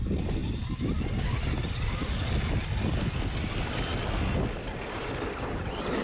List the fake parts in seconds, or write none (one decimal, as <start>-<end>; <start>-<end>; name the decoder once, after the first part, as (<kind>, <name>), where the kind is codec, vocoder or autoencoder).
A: none